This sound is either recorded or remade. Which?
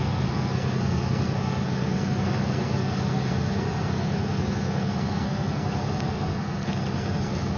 remade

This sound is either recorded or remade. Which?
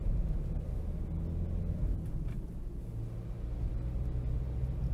recorded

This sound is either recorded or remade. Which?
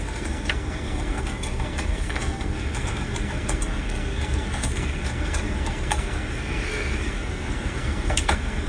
remade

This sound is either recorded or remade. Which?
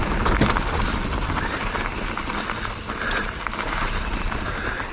recorded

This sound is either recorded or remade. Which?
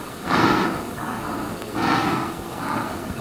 remade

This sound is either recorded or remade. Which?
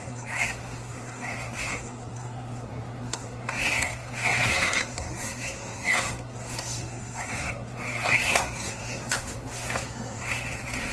remade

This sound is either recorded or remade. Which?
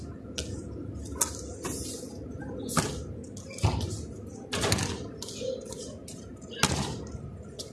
recorded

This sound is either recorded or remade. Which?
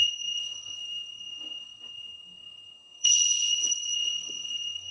remade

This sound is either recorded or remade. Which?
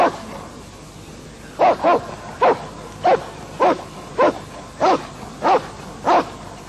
recorded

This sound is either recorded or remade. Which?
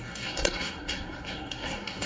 remade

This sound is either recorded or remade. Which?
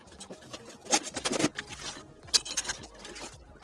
recorded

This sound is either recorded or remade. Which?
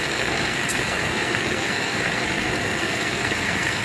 remade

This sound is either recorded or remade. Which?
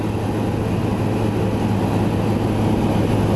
recorded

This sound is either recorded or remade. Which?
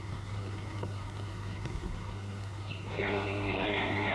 remade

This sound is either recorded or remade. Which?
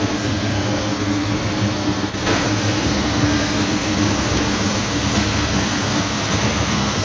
remade